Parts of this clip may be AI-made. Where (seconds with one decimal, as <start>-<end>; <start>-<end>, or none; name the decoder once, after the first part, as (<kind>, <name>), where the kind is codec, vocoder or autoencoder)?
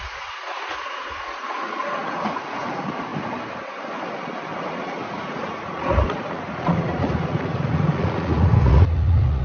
0.0-3.1 (vocoder, Vocos); 4.7-9.4